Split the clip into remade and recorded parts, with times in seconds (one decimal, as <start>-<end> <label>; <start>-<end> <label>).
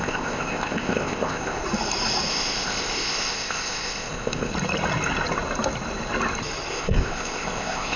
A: 0.0-1.6 remade; 1.6-2.3 recorded; 2.3-4.5 remade; 4.5-6.7 recorded; 6.7-8.0 remade